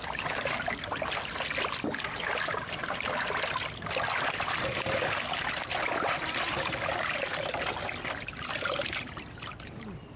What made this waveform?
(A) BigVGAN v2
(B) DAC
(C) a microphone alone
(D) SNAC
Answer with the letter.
C